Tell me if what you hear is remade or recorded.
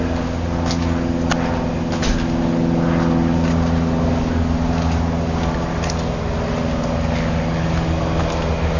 recorded